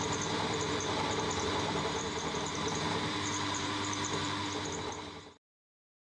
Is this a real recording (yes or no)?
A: no